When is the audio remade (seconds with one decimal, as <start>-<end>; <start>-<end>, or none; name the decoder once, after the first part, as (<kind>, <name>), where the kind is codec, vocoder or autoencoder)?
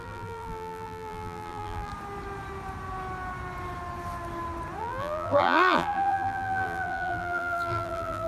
0.0-1.9 (vocoder, BigVGAN v2); 4.8-8.3